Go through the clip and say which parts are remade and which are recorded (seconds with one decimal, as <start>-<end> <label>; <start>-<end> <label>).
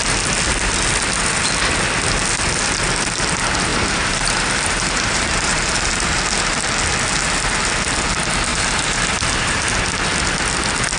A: 0.0-3.7 recorded; 3.7-5.9 remade; 5.9-8.5 recorded; 8.5-9.8 remade; 9.8-11.0 recorded